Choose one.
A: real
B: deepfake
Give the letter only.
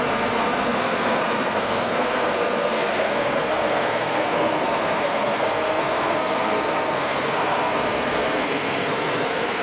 B